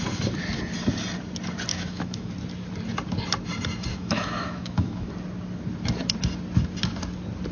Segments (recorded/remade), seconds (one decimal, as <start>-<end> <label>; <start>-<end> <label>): 0.0-1.7 recorded; 1.7-2.3 remade; 2.3-3.9 recorded; 3.9-5.1 remade; 5.1-7.5 recorded